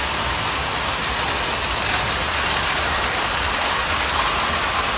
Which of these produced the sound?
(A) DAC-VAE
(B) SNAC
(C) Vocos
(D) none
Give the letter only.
D